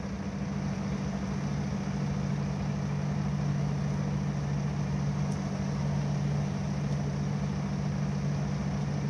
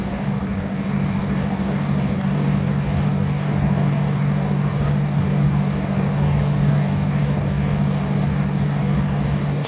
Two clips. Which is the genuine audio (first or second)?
first